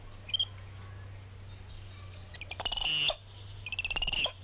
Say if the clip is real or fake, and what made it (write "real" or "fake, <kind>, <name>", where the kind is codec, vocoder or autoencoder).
real